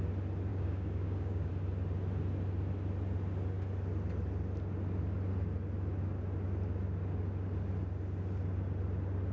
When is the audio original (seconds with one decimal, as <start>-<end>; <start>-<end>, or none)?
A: 0.0-0.5; 1.5-9.3